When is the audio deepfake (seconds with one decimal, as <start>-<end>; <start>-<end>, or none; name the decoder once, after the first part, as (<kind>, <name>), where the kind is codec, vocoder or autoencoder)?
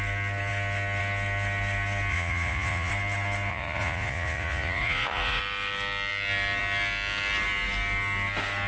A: 2.1-2.9 (vocoder, Vocos); 3.5-5.4